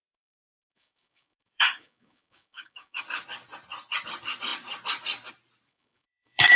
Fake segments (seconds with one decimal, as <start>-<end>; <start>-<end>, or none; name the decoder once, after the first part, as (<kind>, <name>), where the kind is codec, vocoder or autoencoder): 0.0-3.0 (codec, DAC); 5.7-6.6